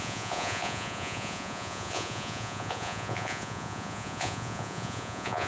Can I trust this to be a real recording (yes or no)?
no